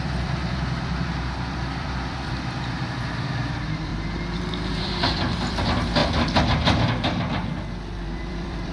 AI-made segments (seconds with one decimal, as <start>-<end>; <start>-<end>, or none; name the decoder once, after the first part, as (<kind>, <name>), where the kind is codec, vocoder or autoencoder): 0.0-3.9 (vocoder, BigVGAN v2); 4.8-6.0; 8.0-8.7